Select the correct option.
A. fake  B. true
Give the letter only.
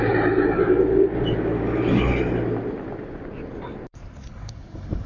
B